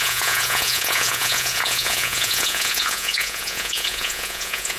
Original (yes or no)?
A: no